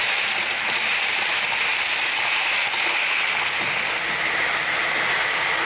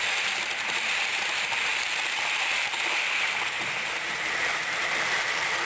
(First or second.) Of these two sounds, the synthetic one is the second